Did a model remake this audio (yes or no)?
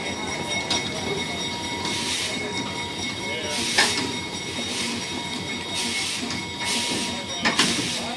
no